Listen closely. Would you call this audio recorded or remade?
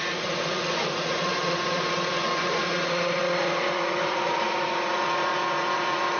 remade